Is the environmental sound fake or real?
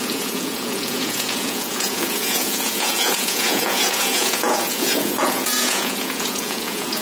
fake